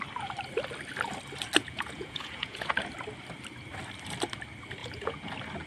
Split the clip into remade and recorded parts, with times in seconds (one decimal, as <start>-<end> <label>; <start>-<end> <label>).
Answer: 0.0-1.6 recorded; 1.6-2.7 remade; 2.7-4.8 recorded; 4.8-5.3 remade; 5.3-5.7 recorded